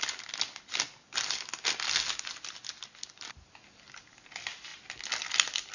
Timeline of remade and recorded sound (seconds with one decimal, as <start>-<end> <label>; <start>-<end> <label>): 0.0-4.7 recorded; 4.7-5.7 remade